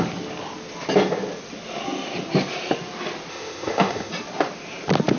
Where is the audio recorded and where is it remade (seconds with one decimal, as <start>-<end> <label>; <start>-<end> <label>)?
0.0-3.3 recorded; 3.3-4.1 remade; 4.1-5.2 recorded